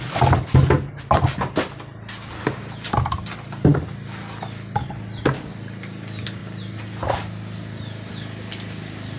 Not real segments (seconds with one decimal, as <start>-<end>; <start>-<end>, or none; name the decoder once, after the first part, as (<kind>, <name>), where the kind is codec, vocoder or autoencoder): none